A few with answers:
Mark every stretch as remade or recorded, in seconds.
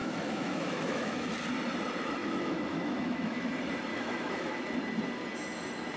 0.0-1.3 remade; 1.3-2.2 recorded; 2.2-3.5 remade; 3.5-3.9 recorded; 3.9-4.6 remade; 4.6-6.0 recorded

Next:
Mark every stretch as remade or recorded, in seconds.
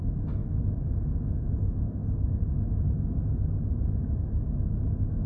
0.0-0.4 recorded; 0.4-1.4 remade; 1.4-5.3 recorded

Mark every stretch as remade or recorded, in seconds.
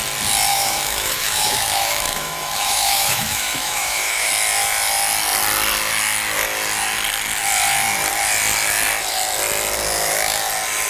0.0-0.5 recorded; 0.5-4.3 remade; 4.3-10.9 recorded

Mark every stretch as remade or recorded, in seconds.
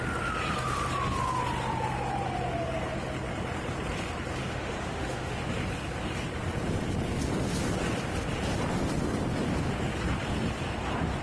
0.0-4.4 recorded; 4.4-5.4 remade; 5.4-11.2 recorded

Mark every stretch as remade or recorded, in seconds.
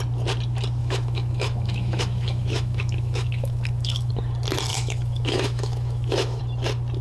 0.0-0.8 recorded; 0.8-4.1 remade; 4.1-4.7 recorded; 4.7-6.4 remade; 6.4-7.0 recorded